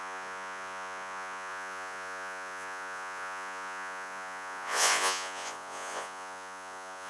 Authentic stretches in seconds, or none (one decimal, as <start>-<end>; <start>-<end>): none